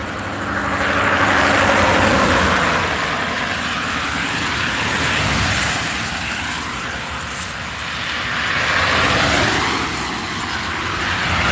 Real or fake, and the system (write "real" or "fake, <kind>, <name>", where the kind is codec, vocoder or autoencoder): real